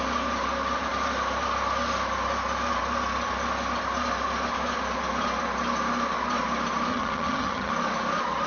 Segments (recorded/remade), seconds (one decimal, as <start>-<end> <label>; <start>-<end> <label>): 0.0-6.9 recorded; 6.9-7.7 remade; 7.7-8.5 recorded